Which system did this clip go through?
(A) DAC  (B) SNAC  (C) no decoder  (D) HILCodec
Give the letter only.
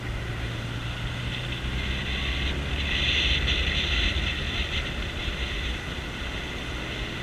C